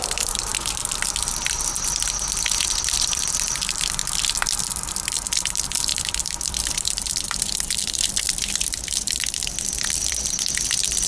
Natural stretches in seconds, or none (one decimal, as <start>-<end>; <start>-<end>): 0.5-2.6; 4.0-4.9

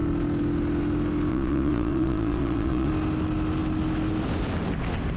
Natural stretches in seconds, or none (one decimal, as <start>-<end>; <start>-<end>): 0.0-1.3; 2.9-5.2

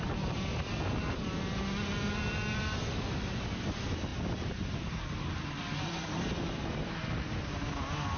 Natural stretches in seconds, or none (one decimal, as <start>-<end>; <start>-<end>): 0.0-8.2

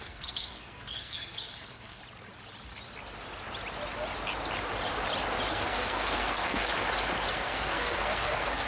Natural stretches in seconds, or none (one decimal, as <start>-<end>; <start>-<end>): 2.0-5.5; 6.7-7.3

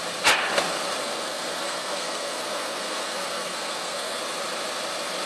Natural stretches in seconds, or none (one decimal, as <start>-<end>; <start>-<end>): 0.0-1.0; 4.2-5.3

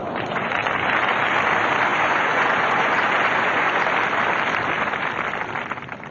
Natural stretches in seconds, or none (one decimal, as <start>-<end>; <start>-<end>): 0.7-1.9; 3.8-6.1

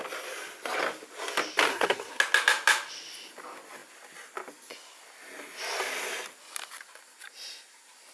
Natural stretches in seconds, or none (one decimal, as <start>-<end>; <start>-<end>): 0.0-1.7; 2.2-8.1

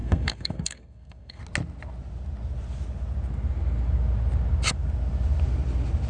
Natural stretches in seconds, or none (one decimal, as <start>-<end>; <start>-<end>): 1.4-6.1